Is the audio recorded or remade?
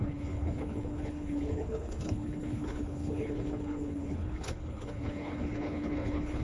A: remade